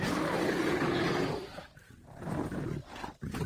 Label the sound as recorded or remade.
remade